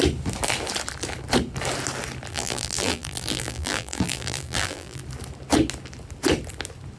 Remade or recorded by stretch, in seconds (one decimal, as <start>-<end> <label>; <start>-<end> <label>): 0.0-2.3 recorded; 2.3-5.0 remade; 5.0-7.0 recorded